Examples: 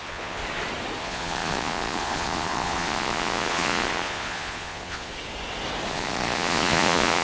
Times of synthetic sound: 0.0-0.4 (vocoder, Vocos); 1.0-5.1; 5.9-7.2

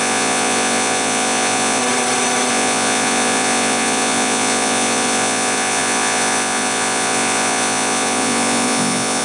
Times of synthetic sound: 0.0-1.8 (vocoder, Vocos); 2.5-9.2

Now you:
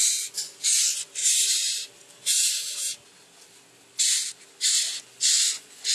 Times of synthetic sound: 0.0-1.2 (vocoder, Vocos); 4.7-5.9

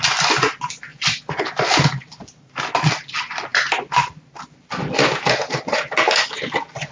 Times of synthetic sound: 0.9-1.4 (vocoder, Vocos)

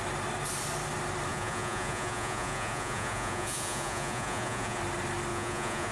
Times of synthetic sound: 1.3-4.8 (vocoder, Vocos); 5.3-5.9